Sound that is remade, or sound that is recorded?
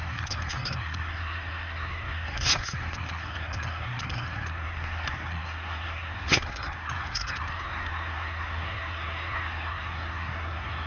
remade